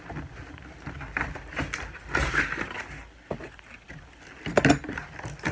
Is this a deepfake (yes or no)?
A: no